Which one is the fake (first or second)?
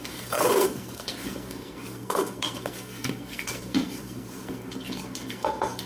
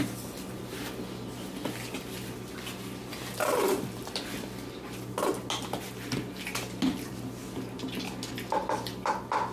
first